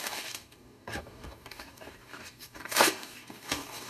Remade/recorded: remade